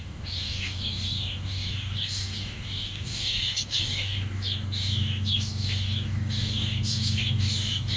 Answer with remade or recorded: remade